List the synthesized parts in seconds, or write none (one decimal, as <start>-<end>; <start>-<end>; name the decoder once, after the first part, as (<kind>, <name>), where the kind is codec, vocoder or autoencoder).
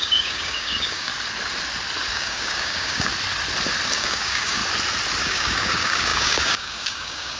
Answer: 0.0-1.1 (codec, DAC); 2.1-3.1; 3.9-4.6; 5.2-7.4